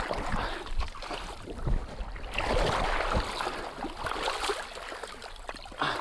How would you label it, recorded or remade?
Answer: recorded